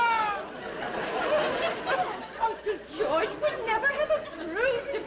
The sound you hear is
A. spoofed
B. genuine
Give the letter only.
B